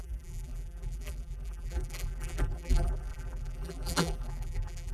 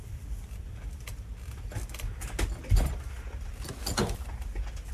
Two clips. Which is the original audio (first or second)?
second